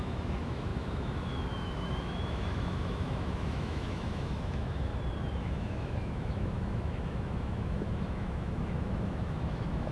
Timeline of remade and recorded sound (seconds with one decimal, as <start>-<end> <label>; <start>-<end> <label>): 0.0-4.9 remade; 4.9-5.4 recorded; 5.4-9.9 remade

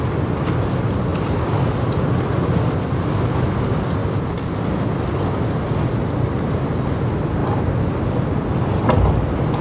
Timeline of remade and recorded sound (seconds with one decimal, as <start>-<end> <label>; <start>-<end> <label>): 0.0-1.1 recorded; 1.1-1.6 remade; 1.6-4.0 recorded; 4.0-5.9 remade; 5.9-7.4 recorded; 7.4-8.0 remade; 8.0-9.6 recorded